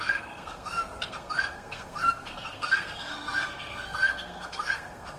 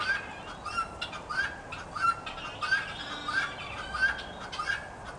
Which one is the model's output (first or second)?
first